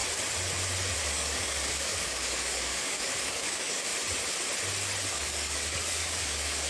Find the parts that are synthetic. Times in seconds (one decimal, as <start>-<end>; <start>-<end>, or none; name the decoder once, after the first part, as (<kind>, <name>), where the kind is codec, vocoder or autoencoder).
1.0-3.9 (codec, DAC); 5.1-6.7